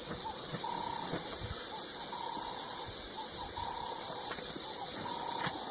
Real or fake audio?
real